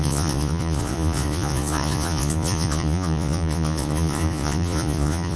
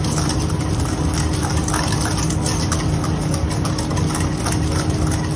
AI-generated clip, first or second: first